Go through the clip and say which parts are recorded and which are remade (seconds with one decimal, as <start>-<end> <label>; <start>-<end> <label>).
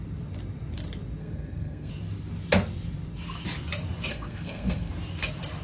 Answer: 0.0-1.2 recorded; 1.2-1.9 remade; 1.9-4.1 recorded; 4.1-4.9 remade; 4.9-5.6 recorded